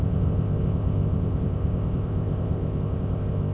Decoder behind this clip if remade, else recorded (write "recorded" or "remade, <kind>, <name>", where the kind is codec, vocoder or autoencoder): remade, codec, ZipCodec